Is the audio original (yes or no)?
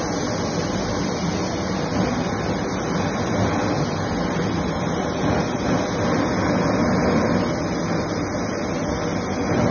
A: yes